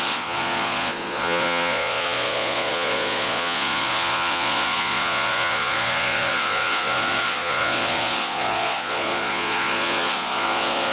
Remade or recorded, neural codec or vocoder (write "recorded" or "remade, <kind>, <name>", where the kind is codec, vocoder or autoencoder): remade, vocoder, Vocos